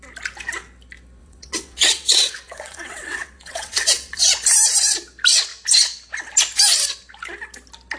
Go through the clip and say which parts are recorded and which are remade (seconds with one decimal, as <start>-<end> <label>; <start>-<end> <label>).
0.0-1.2 recorded; 1.2-4.3 remade; 4.3-8.0 recorded